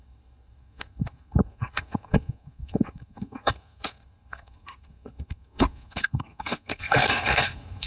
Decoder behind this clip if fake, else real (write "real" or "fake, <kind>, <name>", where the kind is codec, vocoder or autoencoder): fake, codec, SNAC